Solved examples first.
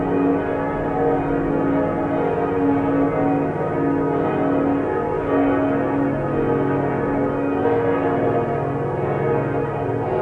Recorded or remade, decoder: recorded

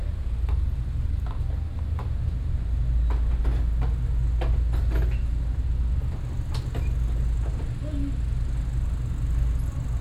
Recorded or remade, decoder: recorded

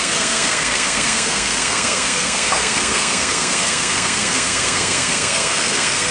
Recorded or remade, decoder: remade, codec, SNAC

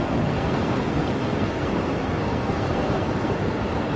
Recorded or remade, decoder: remade, codec, SNAC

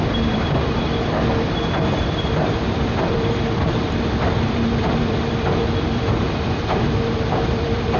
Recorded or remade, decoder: remade, vocoder, BigVGAN v2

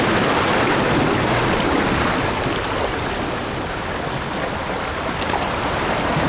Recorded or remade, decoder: recorded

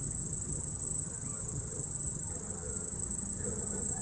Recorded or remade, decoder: remade, vocoder, HiFi-GAN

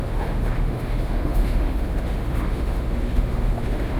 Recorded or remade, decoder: remade, autoencoder, DAC-VAE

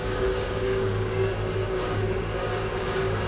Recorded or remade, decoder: remade, codec, DAC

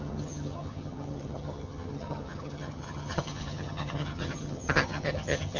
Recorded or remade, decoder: remade, vocoder, HiFi-GAN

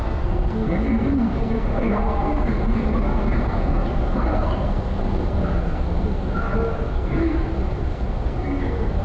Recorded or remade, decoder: remade, codec, SNAC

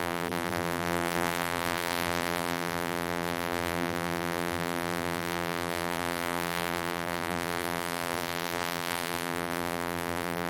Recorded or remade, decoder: remade, vocoder, BigVGAN v2